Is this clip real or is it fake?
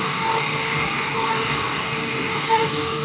fake